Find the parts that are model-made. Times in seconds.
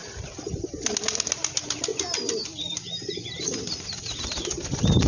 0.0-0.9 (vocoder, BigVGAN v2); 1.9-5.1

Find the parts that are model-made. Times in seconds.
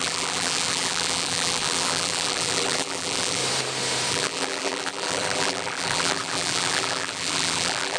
0.0-3.4 (vocoder, BigVGAN v2); 4.1-8.0